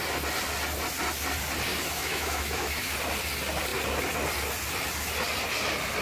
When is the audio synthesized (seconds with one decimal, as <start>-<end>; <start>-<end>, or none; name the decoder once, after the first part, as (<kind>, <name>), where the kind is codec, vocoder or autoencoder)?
1.7-2.9 (autoencoder, DAC-VAE)